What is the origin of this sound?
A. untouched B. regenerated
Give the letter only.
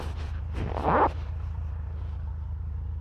A